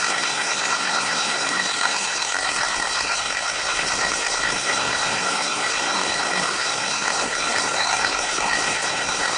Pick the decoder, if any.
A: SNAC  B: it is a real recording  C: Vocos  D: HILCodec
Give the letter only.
A